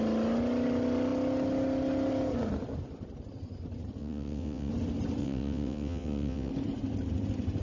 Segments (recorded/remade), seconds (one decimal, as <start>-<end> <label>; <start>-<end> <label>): 0.0-4.0 recorded; 4.0-4.7 remade; 4.7-5.2 recorded; 5.2-6.5 remade; 6.5-7.6 recorded